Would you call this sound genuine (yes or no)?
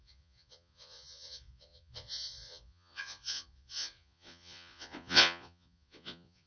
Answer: no